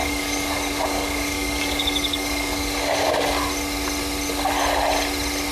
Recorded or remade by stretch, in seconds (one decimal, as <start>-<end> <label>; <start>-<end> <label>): 0.0-3.3 remade; 3.3-5.5 recorded